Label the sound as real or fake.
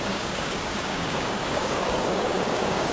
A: fake